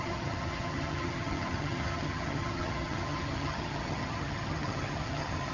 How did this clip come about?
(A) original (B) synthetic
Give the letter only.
B